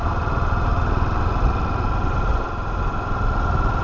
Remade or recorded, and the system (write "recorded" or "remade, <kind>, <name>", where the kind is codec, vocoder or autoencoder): recorded